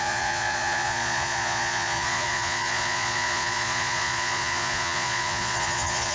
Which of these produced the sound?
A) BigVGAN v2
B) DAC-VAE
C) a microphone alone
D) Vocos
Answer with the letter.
D